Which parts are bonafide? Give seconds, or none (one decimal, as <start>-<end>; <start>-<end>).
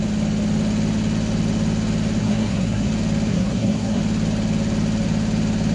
0.0-2.2; 2.9-3.3; 4.0-5.7